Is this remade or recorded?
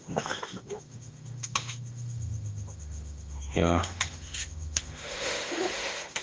remade